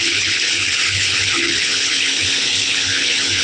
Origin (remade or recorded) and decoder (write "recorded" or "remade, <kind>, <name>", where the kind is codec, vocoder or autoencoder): remade, codec, HILCodec